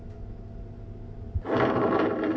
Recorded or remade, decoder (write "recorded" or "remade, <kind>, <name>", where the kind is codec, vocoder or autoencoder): recorded